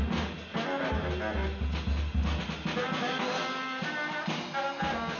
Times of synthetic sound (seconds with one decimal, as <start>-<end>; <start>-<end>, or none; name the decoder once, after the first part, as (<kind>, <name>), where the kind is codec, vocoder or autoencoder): none